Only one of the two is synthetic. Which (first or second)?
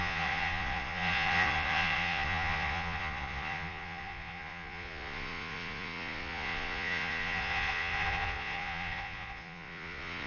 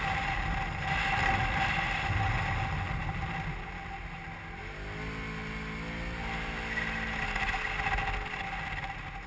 first